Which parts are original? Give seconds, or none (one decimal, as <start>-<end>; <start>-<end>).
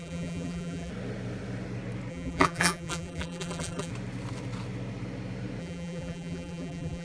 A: 0.9-2.1; 3.9-5.6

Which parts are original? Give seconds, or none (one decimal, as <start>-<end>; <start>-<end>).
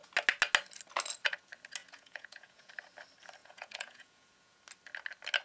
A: 0.0-1.8; 2.7-3.4; 4.6-5.4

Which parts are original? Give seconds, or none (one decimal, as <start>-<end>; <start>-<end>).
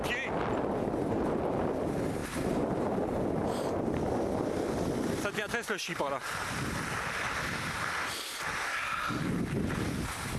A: 0.0-10.4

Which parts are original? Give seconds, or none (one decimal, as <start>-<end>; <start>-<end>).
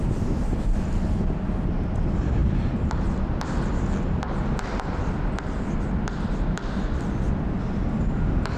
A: 0.0-8.6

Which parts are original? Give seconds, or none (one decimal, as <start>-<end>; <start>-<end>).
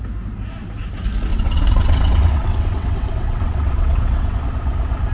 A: 0.0-1.3; 4.4-5.1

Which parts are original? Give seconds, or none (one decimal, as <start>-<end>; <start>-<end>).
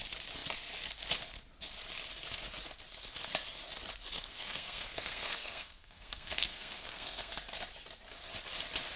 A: 0.0-4.2; 7.3-9.0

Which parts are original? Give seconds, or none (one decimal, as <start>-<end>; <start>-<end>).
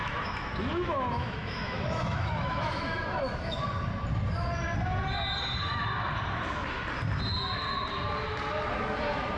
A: 3.6-9.4